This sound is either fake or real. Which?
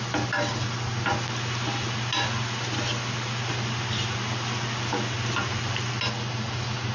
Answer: real